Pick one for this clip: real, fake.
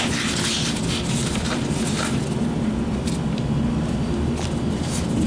real